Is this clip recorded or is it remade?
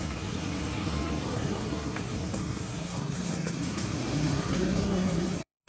remade